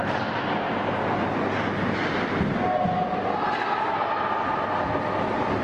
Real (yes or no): yes